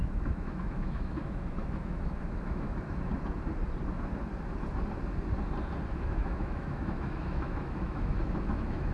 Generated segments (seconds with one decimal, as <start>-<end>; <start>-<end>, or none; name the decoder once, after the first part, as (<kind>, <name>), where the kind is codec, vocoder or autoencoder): 0.0-3.1 (autoencoder, DAC-VAE); 5.9-8.9